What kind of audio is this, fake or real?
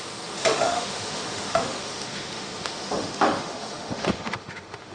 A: fake